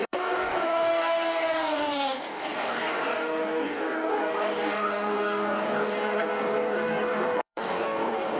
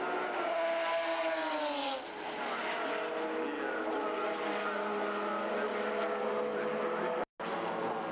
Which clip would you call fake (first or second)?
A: first